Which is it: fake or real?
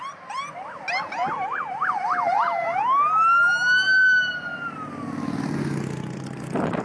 real